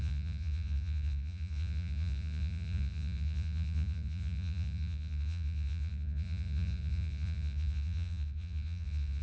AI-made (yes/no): yes